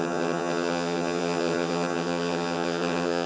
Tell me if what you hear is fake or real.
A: fake